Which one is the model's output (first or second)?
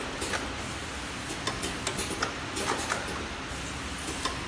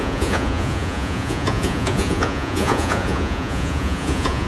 second